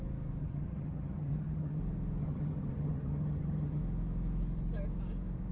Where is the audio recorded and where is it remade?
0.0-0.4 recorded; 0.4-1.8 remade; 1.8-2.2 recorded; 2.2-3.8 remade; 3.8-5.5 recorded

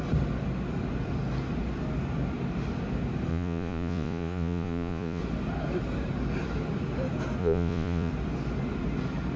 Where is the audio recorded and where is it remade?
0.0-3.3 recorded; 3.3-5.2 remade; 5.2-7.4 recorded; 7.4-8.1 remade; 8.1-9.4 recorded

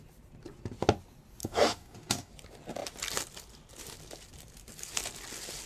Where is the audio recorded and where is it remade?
0.0-1.4 recorded; 1.4-2.3 remade; 2.3-5.7 recorded

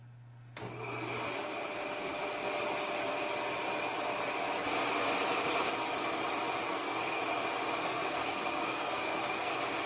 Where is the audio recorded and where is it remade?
0.0-6.7 recorded; 6.7-7.2 remade; 7.2-7.8 recorded; 7.8-9.5 remade; 9.5-9.9 recorded

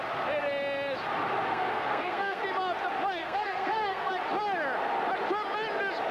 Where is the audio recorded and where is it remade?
0.0-1.5 recorded; 1.5-2.4 remade; 2.4-3.2 recorded; 3.2-4.1 remade; 4.1-6.1 recorded

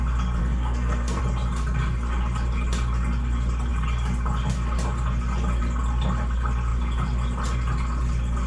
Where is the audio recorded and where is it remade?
0.0-0.4 recorded; 0.4-1.2 remade; 1.2-8.5 recorded